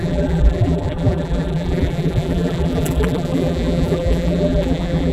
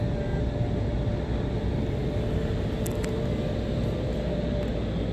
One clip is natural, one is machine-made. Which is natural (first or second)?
second